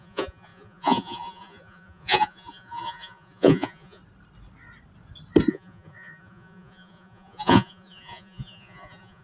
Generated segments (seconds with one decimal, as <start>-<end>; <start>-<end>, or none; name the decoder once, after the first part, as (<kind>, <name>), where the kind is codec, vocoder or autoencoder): 0.0-4.0 (vocoder, Vocos); 5.5-9.2